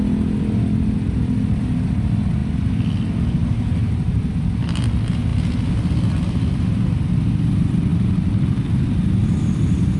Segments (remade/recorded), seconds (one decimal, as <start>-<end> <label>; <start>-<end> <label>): 0.0-10.0 recorded